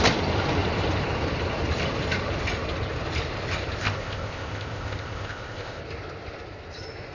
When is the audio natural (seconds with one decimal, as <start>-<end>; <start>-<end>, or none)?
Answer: 0.0-3.8; 5.8-7.1